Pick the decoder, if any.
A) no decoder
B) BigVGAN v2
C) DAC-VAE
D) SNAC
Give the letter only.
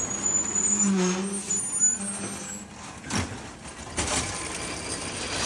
A